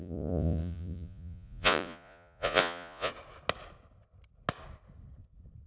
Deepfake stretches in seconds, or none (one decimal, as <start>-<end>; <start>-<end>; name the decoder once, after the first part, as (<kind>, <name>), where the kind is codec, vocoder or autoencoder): 0.0-3.1 (vocoder, Vocos)